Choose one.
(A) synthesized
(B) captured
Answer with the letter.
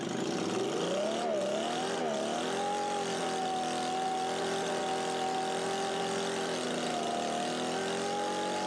B